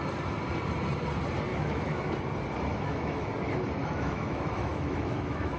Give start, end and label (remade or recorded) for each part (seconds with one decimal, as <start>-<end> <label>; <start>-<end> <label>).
0.0-1.5 recorded; 1.5-2.1 remade; 2.1-2.7 recorded; 2.7-3.3 remade; 3.3-3.8 recorded; 3.8-5.6 remade